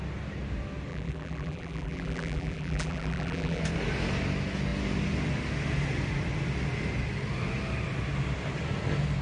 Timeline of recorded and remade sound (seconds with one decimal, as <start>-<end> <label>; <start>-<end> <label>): 0.0-0.9 recorded; 0.9-3.6 remade; 3.6-9.2 recorded